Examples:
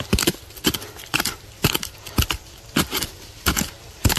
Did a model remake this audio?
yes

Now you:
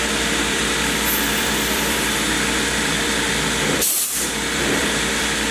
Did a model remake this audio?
yes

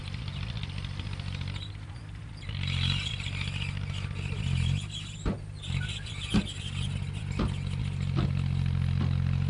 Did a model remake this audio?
no